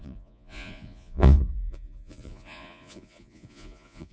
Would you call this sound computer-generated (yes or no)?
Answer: yes